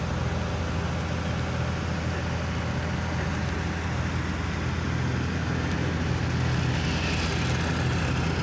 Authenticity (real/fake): real